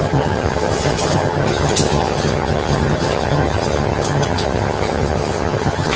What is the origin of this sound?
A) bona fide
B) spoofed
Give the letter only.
B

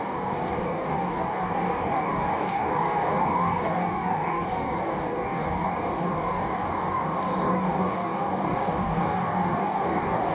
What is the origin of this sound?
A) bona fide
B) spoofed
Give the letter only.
B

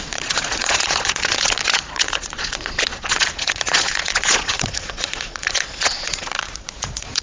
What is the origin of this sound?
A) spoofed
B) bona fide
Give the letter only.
A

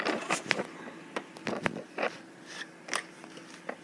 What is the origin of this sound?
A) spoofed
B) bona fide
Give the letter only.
B